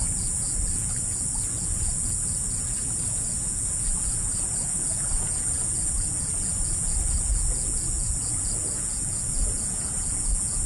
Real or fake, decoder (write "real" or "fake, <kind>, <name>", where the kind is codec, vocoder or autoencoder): fake, vocoder, Vocos